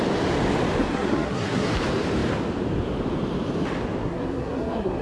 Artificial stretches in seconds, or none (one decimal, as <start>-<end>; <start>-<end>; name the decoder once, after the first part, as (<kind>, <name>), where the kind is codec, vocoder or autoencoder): 0.8-1.7 (codec, SNAC); 4.0-5.0